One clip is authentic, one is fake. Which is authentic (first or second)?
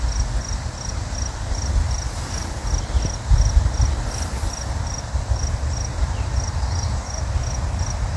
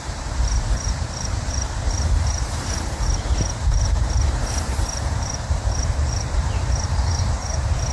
first